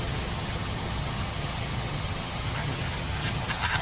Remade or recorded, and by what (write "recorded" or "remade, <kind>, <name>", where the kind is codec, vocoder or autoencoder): remade, vocoder, HiFi-GAN